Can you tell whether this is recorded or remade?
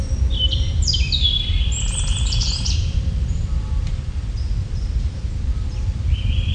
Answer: remade